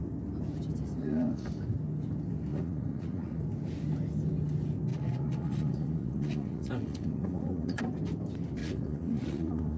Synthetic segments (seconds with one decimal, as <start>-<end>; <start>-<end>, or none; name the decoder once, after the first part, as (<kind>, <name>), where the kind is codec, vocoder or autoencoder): 1.0-1.5 (vocoder, Vocos); 2.5-3.4; 4.9-7.8; 8.6-9.8